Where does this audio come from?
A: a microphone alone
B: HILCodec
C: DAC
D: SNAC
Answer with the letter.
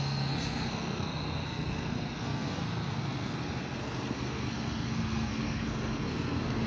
D